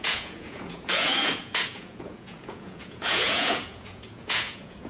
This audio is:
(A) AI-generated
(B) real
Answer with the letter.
A